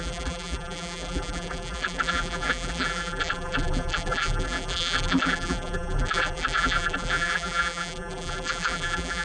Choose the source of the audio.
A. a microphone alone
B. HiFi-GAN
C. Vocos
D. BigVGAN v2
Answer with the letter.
D